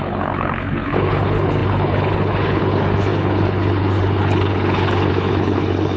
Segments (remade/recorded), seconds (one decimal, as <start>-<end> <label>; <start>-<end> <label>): 0.0-6.0 remade